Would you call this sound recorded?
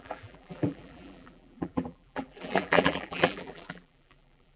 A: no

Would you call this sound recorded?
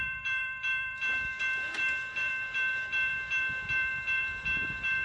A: no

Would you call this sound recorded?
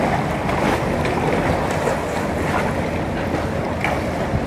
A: yes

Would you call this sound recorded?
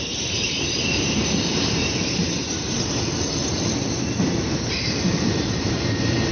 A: no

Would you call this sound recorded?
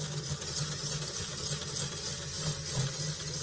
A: yes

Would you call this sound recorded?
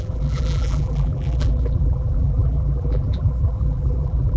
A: no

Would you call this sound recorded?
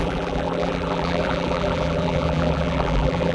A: no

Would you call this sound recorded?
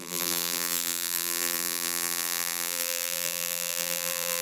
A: no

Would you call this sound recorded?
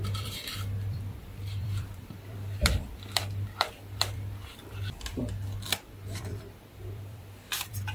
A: no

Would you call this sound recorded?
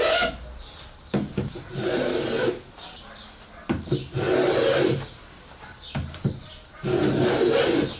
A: yes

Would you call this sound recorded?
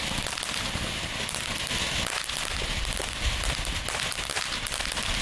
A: yes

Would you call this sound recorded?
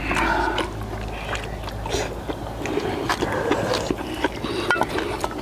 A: yes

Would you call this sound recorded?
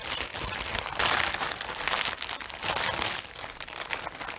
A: yes